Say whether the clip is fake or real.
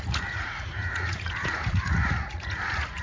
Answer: fake